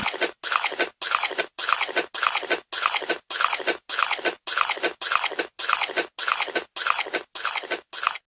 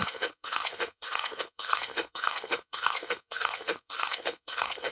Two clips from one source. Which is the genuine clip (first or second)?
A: first